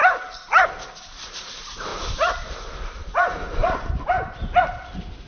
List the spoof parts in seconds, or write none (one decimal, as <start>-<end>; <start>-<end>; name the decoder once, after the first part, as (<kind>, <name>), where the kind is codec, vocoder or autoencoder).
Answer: none

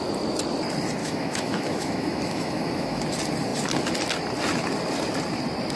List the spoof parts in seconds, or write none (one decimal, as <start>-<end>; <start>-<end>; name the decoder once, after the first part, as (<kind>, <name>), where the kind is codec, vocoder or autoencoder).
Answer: 1.0-3.0 (autoencoder, DAC-VAE)

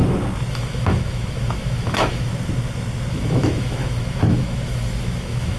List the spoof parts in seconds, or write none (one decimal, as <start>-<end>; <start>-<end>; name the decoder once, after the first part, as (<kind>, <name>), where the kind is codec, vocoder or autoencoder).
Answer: 0.5-2.3 (autoencoder, DAC-VAE); 3.1-5.6

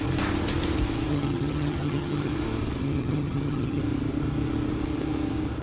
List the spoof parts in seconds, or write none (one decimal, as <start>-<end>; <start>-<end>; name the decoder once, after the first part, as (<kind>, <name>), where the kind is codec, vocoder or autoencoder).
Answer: 1.1-2.3 (vocoder, HiFi-GAN); 2.8-3.8